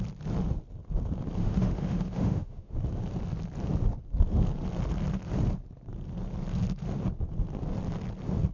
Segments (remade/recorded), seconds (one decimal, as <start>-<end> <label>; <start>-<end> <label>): 0.0-1.4 recorded; 1.4-2.7 remade; 2.7-8.5 recorded